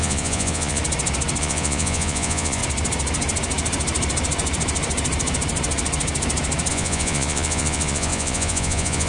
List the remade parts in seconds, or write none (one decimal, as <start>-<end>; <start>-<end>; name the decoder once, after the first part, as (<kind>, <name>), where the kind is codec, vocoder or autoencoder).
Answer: 0.0-0.8 (vocoder, Vocos); 1.4-2.6; 6.7-9.1